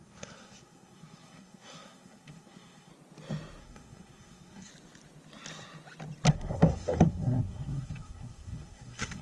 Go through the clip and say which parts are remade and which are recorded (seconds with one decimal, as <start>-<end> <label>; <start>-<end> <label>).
0.0-2.9 remade; 2.9-3.6 recorded; 3.6-4.7 remade; 4.7-6.3 recorded; 6.3-9.2 remade